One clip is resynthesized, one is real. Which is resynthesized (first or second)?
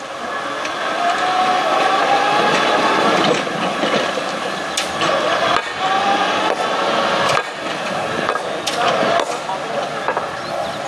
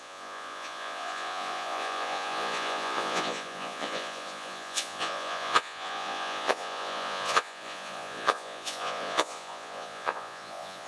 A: second